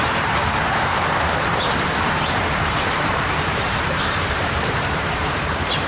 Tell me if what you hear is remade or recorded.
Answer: remade